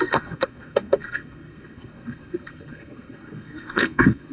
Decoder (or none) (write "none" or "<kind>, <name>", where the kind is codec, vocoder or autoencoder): codec, SNAC